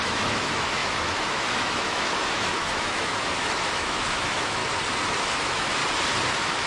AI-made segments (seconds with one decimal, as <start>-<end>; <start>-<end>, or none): 0.0-4.6; 5.2-5.8; 6.3-6.7